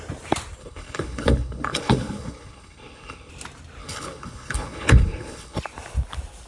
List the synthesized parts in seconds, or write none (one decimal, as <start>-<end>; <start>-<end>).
0.6-3.3; 3.8-5.6